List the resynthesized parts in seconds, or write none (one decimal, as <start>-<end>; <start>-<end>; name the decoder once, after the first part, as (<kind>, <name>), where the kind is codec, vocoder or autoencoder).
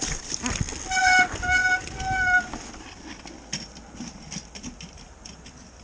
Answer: none